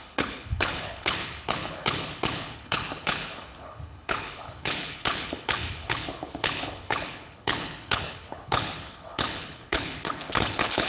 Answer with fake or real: fake